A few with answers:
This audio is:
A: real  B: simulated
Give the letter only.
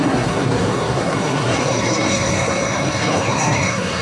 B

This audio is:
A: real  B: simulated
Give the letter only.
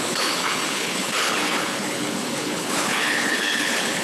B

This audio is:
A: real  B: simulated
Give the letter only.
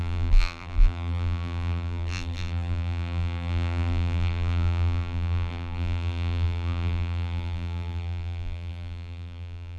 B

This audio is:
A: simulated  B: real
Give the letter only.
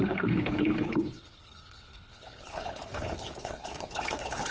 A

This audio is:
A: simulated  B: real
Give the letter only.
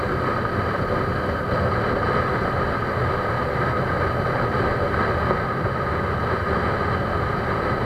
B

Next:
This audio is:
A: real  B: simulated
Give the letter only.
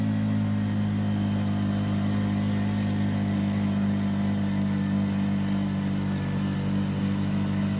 A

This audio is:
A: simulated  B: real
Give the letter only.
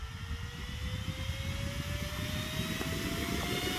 B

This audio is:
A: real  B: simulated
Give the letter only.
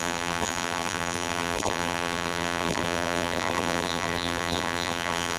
B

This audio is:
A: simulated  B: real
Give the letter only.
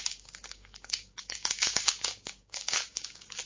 A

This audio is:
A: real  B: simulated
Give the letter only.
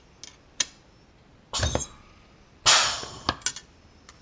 A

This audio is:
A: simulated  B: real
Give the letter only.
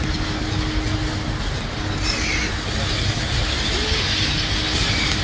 B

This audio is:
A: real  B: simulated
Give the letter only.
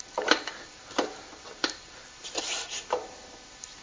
B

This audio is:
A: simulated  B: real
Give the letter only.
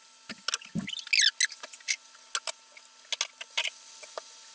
B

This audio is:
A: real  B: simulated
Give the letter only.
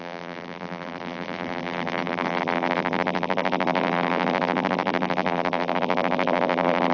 B